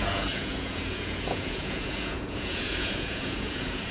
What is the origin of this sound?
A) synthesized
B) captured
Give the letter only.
A